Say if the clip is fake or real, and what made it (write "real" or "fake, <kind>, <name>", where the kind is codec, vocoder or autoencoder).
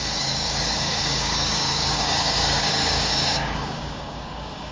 fake, codec, DAC